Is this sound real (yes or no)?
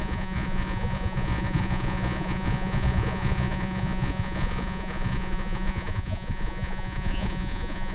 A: no